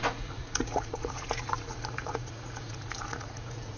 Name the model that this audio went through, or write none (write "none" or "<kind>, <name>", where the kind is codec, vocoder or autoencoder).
vocoder, Vocos